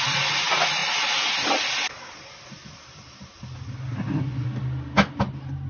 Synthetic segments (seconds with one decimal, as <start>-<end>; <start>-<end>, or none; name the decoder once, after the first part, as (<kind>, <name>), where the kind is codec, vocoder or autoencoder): none